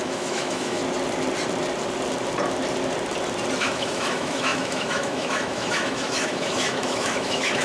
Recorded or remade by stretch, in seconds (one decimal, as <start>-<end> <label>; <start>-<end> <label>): 0.0-0.8 remade; 0.8-3.6 recorded; 3.6-7.6 remade